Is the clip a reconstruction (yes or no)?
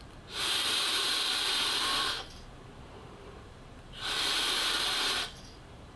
yes